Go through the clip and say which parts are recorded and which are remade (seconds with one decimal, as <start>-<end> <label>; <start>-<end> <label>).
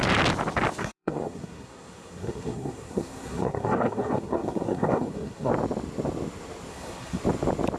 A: 0.0-0.8 recorded; 0.8-5.5 remade; 5.5-6.7 recorded; 6.7-7.2 remade; 7.2-7.8 recorded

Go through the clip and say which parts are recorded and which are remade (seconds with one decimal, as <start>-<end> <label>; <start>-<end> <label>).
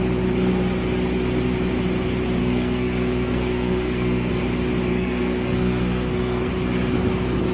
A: 0.0-2.4 recorded; 2.4-4.3 remade; 4.3-4.9 recorded; 4.9-6.5 remade; 6.5-7.5 recorded